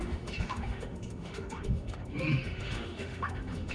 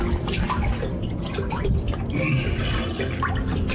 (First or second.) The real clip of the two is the second